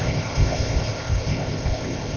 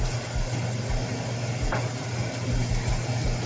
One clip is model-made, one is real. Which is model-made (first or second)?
first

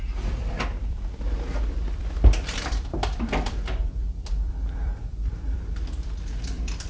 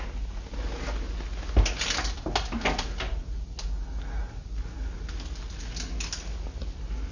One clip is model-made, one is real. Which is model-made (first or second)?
first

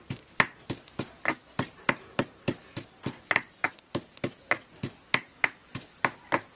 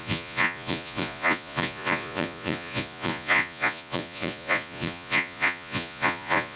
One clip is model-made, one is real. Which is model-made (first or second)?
second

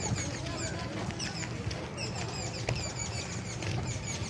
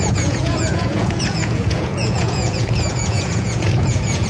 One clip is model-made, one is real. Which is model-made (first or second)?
second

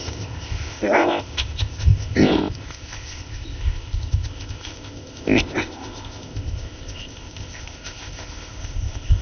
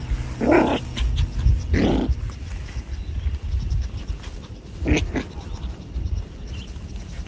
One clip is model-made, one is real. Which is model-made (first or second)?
first